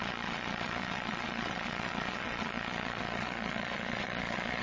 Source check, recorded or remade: remade